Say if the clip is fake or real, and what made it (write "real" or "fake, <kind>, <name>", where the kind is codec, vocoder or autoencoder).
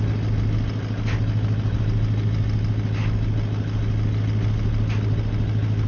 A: real